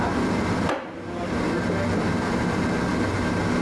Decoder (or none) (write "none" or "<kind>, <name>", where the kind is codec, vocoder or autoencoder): none